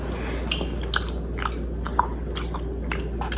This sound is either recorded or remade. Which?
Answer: recorded